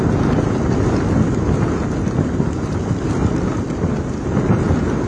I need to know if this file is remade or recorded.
recorded